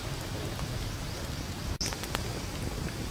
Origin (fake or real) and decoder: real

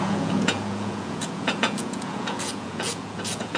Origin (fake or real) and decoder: fake, vocoder, Vocos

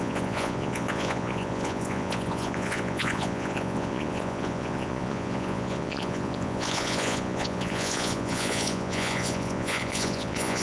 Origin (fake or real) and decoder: fake, vocoder, Vocos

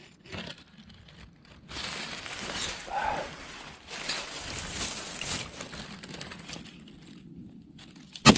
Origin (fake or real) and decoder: real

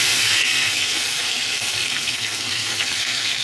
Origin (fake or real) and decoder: fake, codec, SNAC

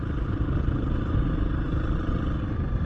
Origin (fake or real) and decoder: real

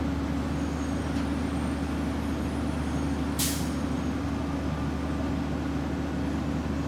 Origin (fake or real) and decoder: real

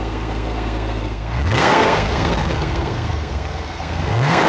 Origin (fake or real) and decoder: fake, codec, SNAC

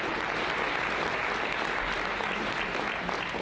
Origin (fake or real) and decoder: real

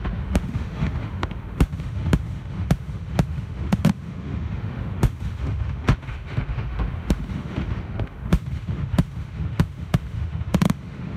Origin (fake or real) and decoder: fake, autoencoder, DAC-VAE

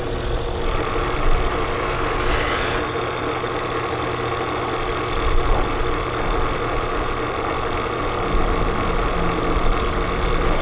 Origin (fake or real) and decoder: real